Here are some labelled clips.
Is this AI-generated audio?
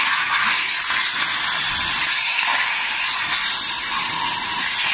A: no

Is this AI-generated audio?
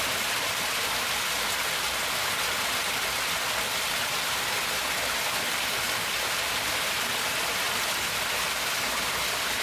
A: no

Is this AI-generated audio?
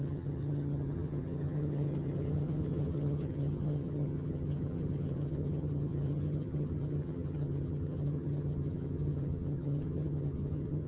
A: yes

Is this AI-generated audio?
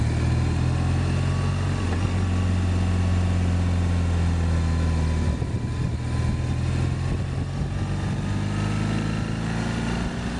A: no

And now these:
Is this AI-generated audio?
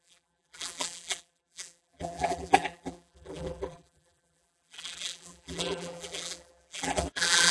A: yes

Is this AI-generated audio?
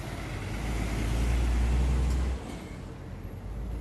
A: no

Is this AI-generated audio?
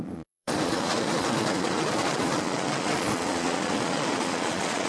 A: yes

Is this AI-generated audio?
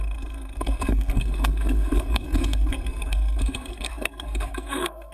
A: yes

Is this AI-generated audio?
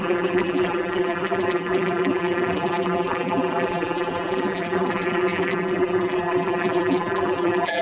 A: yes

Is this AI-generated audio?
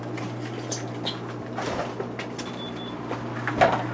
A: no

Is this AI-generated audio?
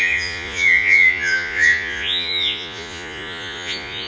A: yes